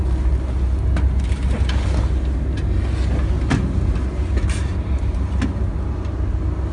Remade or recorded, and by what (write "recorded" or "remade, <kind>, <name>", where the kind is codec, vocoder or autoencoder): recorded